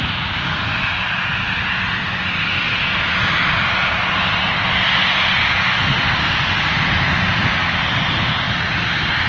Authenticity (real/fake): real